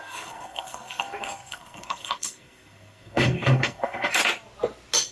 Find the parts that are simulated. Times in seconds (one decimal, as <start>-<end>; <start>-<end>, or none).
0.0-4.2